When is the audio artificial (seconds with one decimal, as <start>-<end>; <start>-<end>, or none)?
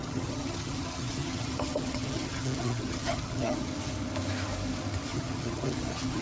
0.0-3.7; 5.1-6.2